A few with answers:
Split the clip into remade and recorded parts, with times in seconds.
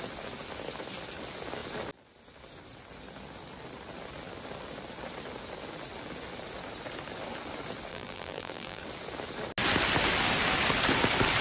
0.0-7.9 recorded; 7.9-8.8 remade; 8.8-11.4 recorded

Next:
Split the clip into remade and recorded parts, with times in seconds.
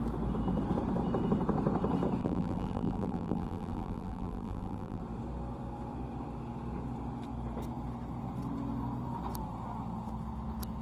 0.0-2.2 recorded; 2.2-5.0 remade; 5.0-10.8 recorded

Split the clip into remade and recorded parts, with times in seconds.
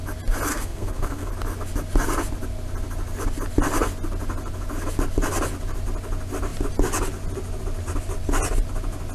0.0-0.5 recorded; 0.5-1.3 remade; 1.3-9.1 recorded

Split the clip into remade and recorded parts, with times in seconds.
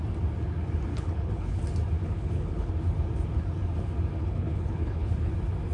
0.0-0.9 recorded; 0.9-1.6 remade; 1.6-2.0 recorded; 2.0-2.7 remade; 2.7-4.2 recorded; 4.2-5.3 remade; 5.3-5.7 recorded